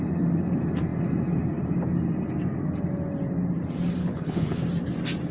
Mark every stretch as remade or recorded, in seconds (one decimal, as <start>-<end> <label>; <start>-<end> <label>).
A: 0.0-4.0 recorded; 4.0-4.6 remade; 4.6-5.3 recorded